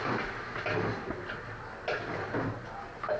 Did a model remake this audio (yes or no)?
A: no